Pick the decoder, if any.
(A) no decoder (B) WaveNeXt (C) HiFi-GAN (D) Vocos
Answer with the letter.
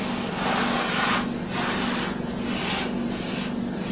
A